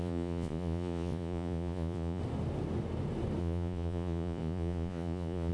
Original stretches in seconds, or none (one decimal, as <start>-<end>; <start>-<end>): 2.2-3.4